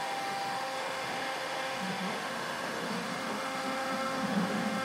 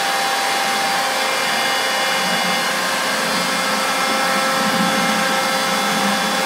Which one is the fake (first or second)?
first